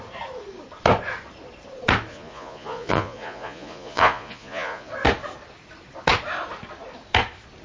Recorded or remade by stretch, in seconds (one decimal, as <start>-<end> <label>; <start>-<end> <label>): 0.0-2.1 recorded; 2.1-4.9 remade; 4.9-7.6 recorded